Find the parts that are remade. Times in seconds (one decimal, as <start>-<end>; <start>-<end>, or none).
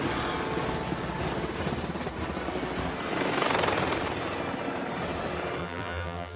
5.6-6.4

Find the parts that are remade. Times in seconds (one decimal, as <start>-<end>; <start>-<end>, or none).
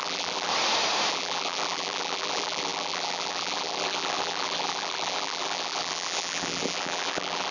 0.0-0.5; 1.1-7.5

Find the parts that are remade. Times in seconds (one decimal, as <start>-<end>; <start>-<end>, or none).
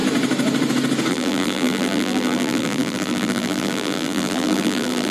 1.1-5.1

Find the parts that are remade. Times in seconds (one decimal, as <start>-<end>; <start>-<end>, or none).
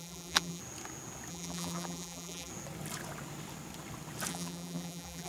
0.0-0.6; 1.3-2.5; 4.3-5.3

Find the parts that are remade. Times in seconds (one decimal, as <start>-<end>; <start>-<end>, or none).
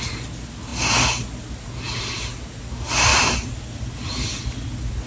3.1-4.4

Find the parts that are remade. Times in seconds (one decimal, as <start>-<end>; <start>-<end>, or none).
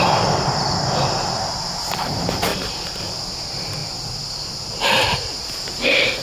2.5-3.0